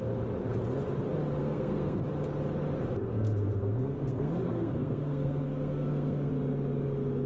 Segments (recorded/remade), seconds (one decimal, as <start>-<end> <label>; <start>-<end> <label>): 0.0-1.4 recorded; 1.4-2.0 remade; 2.0-3.1 recorded; 3.1-6.3 remade; 6.3-7.3 recorded